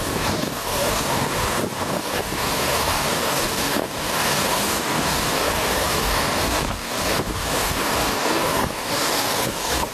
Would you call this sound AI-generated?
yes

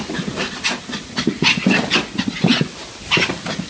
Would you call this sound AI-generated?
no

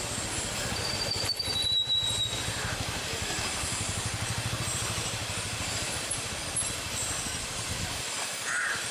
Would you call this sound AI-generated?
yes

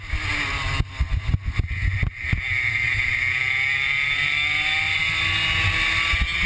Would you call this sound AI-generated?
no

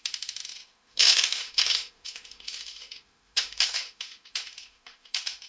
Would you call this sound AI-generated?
yes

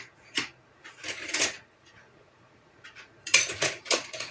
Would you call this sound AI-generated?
yes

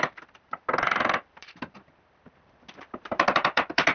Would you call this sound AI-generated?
yes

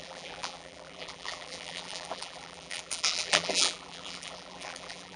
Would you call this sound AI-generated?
yes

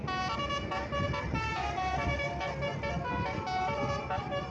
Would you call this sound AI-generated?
no